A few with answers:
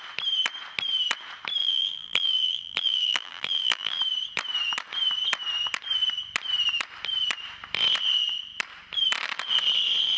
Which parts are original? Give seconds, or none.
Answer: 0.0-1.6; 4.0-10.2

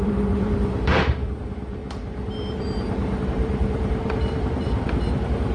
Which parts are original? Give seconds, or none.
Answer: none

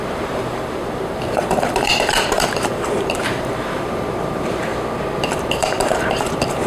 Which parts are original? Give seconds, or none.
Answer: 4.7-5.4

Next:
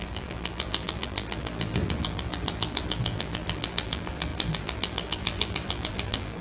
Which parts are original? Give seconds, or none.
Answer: none

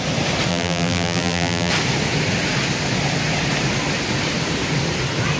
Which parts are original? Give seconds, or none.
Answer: 0.0-0.5; 1.7-5.4